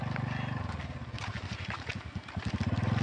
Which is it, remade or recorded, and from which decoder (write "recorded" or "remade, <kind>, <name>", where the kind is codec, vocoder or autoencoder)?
recorded